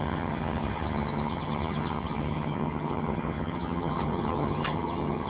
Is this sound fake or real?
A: fake